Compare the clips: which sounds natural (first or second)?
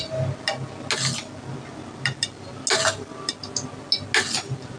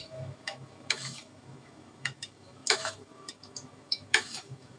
first